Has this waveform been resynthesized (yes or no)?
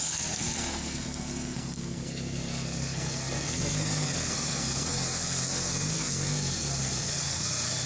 yes